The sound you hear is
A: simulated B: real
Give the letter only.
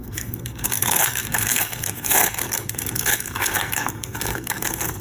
A